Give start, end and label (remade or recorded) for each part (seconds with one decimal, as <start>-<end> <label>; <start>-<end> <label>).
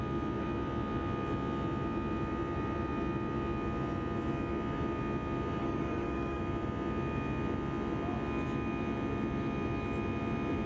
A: 0.0-5.6 recorded; 5.6-6.4 remade; 6.4-10.7 recorded